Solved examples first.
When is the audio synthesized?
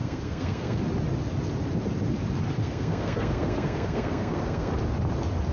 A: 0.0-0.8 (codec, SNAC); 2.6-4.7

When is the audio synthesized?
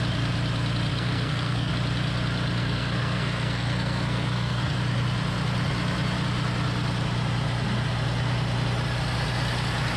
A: 0.9-1.7 (codec, SNAC); 2.6-4.8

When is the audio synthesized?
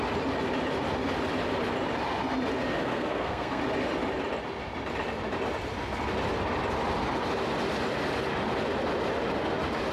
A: 2.8-3.6 (codec, SNAC)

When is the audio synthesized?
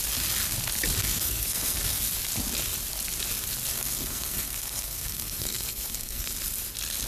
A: 1.0-2.0 (codec, SNAC); 3.7-6.3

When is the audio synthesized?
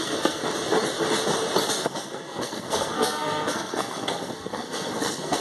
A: 0.0-0.4 (codec, SNAC); 1.7-5.4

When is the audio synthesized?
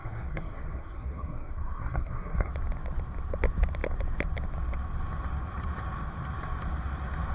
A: 0.0-2.5 (codec, SNAC)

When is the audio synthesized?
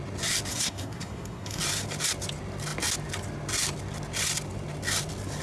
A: 0.5-1.6 (codec, SNAC)